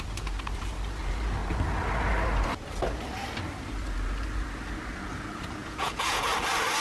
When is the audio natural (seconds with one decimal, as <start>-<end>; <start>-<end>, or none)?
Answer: 0.0-5.6; 6.3-6.8